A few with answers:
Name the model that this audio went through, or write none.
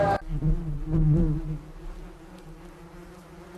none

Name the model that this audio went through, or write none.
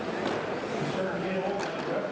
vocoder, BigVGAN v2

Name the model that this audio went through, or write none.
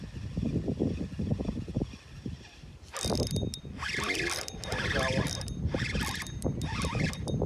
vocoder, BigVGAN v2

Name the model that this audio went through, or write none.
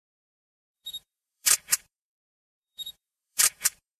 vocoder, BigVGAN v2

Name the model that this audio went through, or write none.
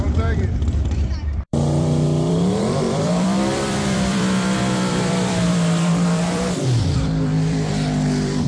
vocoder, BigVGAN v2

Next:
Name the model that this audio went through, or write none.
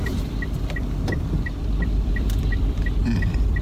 vocoder, BigVGAN v2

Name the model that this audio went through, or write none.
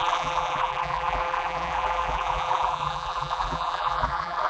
vocoder, BigVGAN v2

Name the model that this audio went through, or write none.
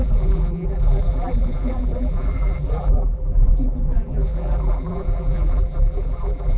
vocoder, BigVGAN v2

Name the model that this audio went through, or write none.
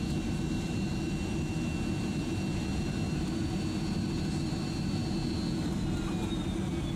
none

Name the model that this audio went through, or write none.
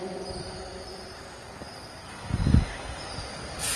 none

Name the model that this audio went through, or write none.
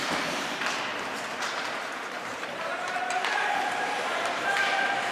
vocoder, BigVGAN v2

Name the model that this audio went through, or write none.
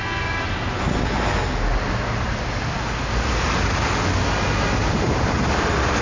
none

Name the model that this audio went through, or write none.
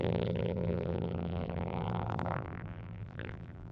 vocoder, BigVGAN v2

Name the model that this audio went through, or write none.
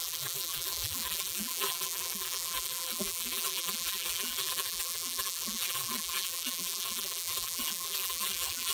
vocoder, BigVGAN v2